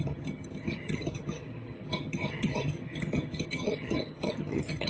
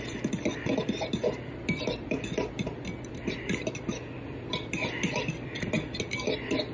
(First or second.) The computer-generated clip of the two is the first